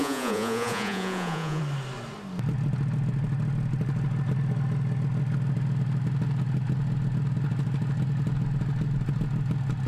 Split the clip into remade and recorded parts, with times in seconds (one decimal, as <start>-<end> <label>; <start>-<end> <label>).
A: 0.0-1.6 remade; 1.6-9.9 recorded